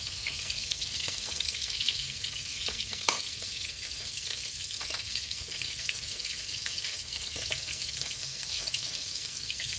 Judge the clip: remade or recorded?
remade